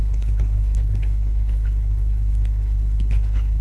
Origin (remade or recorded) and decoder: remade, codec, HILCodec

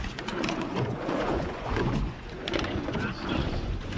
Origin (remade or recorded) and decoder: remade, vocoder, Vocos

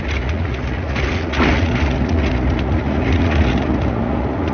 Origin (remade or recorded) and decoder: remade, vocoder, Vocos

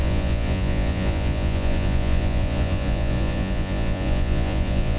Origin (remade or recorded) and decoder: remade, vocoder, Vocos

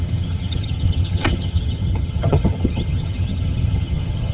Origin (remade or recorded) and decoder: remade, vocoder, HiFi-GAN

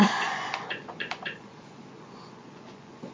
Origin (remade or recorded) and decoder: remade, vocoder, Vocos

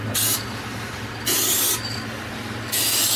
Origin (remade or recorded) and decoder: recorded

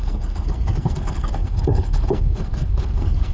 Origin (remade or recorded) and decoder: remade, codec, SNAC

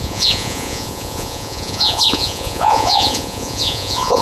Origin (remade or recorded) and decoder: remade, vocoder, Vocos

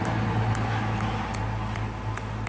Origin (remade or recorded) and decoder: recorded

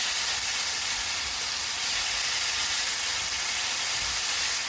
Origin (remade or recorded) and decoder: recorded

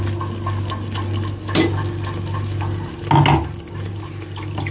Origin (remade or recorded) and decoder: recorded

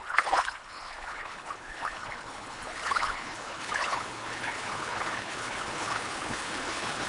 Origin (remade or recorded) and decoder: remade, codec, HILCodec